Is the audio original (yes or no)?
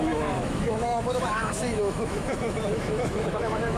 no